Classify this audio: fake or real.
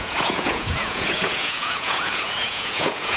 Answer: fake